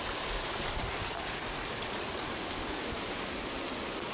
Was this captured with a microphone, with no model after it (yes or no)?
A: yes